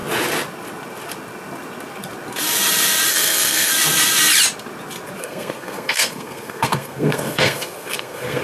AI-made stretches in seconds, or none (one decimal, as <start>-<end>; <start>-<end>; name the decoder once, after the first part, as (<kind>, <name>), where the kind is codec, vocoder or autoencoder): 3.1-3.7 (codec, SNAC); 5.2-8.4